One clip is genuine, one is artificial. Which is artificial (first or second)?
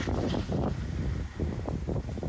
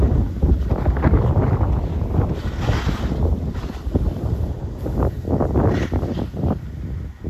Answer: first